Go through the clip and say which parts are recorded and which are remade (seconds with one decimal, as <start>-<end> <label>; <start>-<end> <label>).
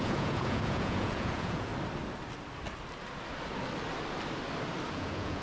0.0-1.7 remade; 1.7-4.9 recorded; 4.9-5.4 remade